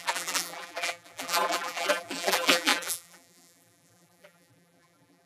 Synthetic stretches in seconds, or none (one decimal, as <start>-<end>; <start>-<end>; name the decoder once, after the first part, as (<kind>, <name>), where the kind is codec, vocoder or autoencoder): 0.0-5.3 (vocoder, BigVGAN v2)